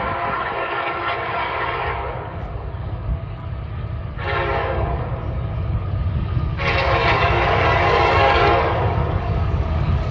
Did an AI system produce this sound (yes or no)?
yes